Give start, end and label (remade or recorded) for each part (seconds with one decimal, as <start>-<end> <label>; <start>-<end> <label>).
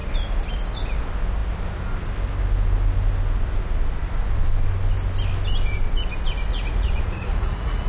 0.0-6.5 recorded; 6.5-7.9 remade